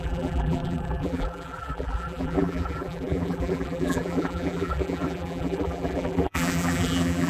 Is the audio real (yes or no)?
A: no